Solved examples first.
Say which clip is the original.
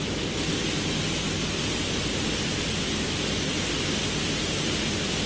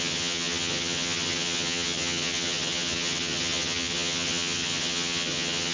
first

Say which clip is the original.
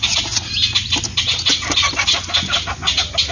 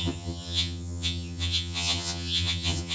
first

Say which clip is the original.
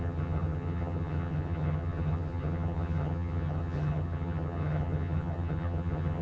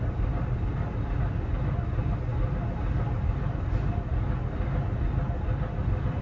second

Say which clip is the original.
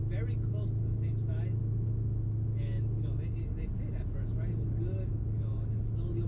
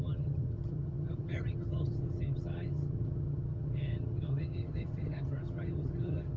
first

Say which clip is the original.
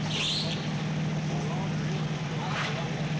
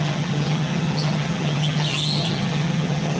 first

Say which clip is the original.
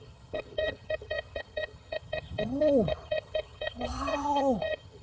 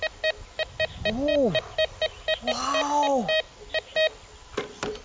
second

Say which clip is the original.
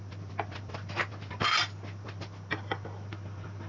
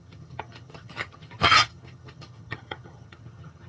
first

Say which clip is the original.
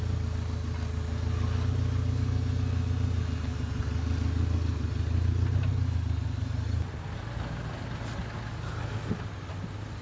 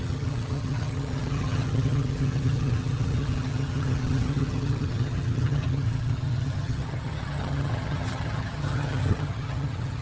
first